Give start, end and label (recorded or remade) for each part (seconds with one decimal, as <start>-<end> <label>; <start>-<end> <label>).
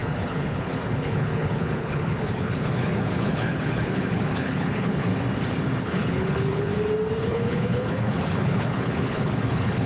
0.0-5.1 remade; 5.1-5.8 recorded; 5.8-6.7 remade; 6.7-7.2 recorded; 7.2-9.9 remade